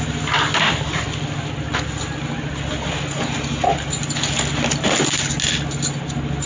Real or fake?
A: real